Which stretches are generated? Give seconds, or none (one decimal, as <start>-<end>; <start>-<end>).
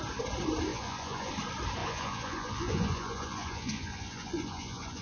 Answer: 0.7-1.3; 1.8-5.0